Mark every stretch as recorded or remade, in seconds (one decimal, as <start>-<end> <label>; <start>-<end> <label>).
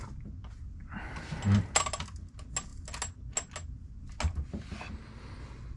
0.0-5.8 recorded